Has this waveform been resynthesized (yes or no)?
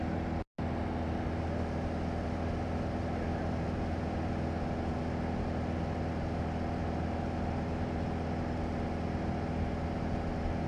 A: no